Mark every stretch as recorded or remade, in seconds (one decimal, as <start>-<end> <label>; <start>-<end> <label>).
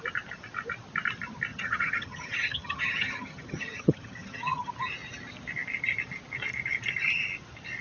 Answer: 0.0-1.5 recorded; 1.5-4.7 remade; 4.7-7.8 recorded